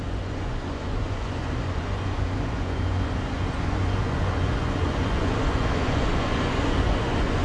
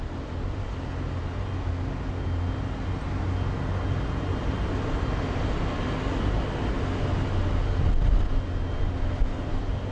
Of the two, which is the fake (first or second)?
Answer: first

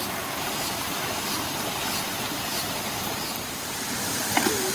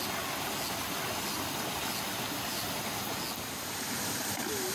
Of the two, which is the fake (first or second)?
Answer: first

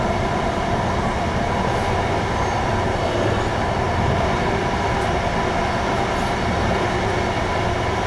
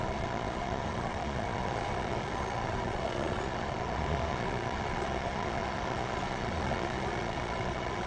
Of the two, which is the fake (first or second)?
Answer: second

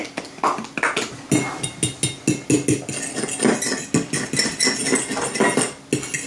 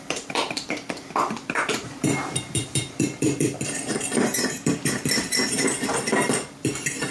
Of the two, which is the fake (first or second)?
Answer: second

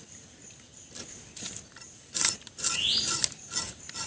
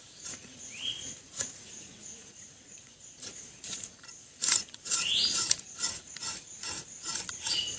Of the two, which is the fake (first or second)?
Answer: second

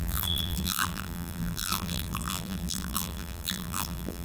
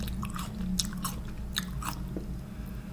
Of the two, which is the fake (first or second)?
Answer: first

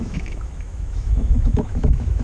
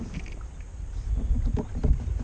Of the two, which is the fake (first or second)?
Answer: first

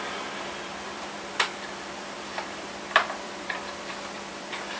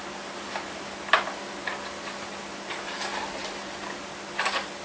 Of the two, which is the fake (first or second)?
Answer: first